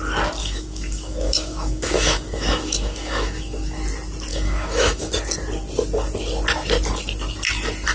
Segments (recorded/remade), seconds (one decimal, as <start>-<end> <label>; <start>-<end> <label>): 0.0-0.4 recorded; 0.4-3.8 remade; 3.8-4.3 recorded; 4.3-5.1 remade; 5.1-7.9 recorded